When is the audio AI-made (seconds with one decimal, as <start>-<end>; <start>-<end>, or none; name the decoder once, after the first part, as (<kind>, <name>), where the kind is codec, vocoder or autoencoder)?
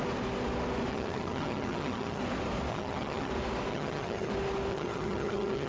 0.9-2.2 (vocoder, HiFi-GAN); 2.7-3.3; 3.7-4.3; 4.7-5.7